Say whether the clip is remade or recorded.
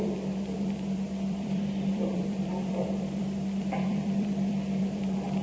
remade